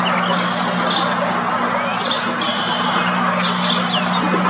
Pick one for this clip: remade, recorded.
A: recorded